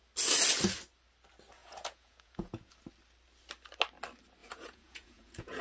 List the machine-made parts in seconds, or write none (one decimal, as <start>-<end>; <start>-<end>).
1.6-2.7; 4.4-5.6